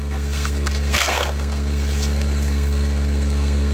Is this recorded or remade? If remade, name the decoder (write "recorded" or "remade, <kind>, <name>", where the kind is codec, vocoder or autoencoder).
remade, codec, SNAC